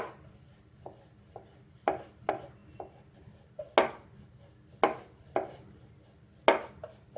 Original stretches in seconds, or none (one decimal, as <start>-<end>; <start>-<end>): 0.0-7.2